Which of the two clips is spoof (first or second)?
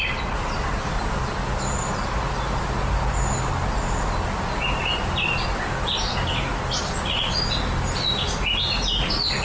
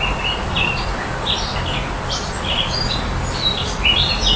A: second